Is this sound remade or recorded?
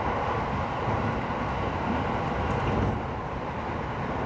recorded